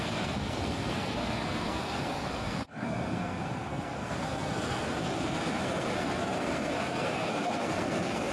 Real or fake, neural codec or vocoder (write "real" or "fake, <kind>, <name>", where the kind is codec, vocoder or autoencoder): fake, codec, SNAC